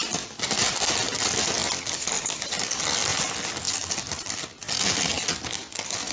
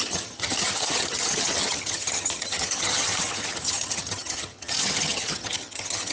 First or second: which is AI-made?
second